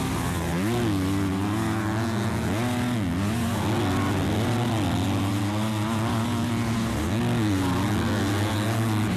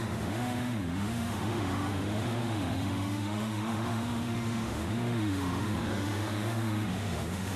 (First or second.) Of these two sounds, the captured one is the first